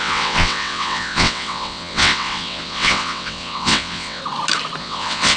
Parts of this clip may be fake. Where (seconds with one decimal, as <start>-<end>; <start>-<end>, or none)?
0.0-4.2; 4.8-5.4